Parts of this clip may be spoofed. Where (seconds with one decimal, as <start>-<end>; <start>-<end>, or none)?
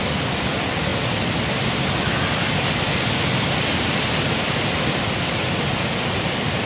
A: none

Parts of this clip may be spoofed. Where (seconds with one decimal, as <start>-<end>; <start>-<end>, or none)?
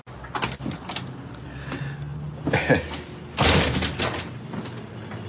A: none